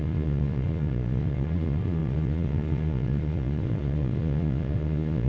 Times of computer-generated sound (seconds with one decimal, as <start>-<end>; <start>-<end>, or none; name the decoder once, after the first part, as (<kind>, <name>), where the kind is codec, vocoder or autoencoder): 0.0-5.3 (vocoder, Vocos)